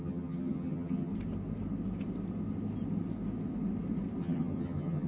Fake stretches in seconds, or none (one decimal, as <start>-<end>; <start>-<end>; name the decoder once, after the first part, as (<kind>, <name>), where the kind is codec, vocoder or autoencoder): 0.0-1.1 (vocoder, HiFi-GAN); 4.2-5.1